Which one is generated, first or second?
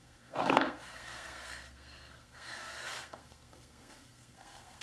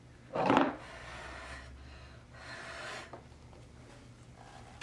first